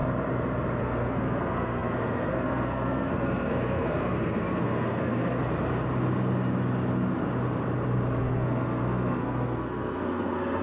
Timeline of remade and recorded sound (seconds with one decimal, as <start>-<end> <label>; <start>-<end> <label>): 0.0-0.8 recorded; 0.8-5.4 remade; 5.4-8.2 recorded; 8.2-10.6 remade